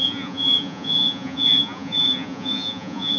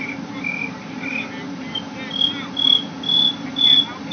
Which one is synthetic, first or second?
first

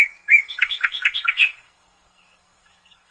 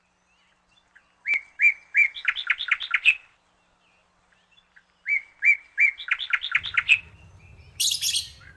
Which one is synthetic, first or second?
first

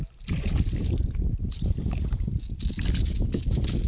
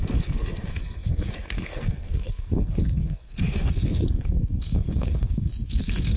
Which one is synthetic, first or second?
second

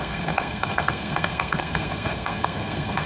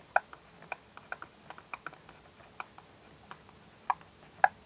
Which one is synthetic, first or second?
first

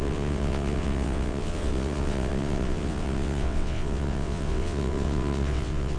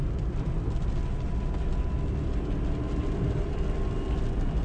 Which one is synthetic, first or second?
first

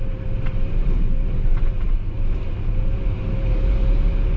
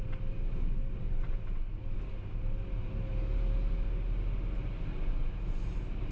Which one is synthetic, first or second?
first